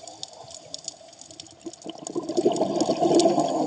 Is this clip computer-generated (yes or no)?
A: no